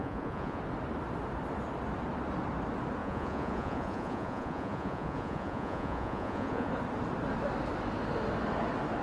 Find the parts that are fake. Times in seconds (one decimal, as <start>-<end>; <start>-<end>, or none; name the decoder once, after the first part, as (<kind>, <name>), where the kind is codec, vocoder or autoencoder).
0.0-0.6 (vocoder, Vocos); 3.0-6.7